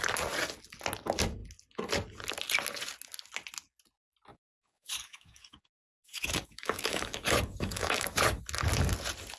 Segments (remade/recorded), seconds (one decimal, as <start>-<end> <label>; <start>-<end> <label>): 0.0-4.3 recorded; 4.3-8.4 remade; 8.4-9.4 recorded